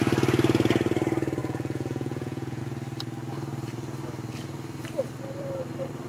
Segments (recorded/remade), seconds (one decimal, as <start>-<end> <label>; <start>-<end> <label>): 0.0-1.4 recorded; 1.4-2.6 remade; 2.6-6.1 recorded